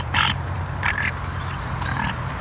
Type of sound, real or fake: fake